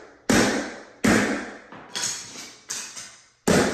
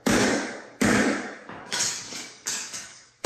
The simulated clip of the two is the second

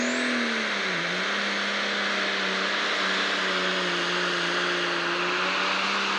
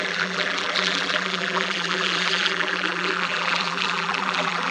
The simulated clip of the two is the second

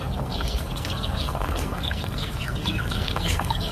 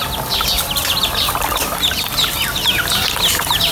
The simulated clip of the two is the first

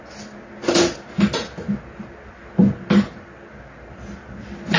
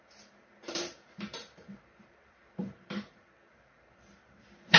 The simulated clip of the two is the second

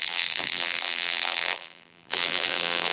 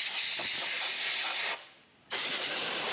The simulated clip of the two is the first